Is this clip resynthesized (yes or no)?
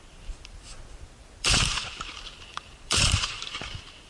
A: yes